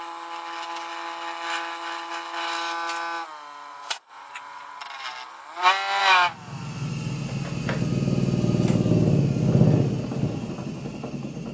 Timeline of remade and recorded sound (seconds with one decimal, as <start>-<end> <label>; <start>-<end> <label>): 0.0-3.7 recorded; 3.7-4.8 remade; 4.8-11.5 recorded